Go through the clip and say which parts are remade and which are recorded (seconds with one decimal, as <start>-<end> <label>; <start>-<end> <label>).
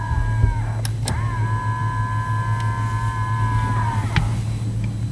0.0-5.1 recorded